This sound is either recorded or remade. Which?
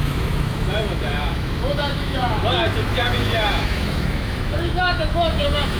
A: remade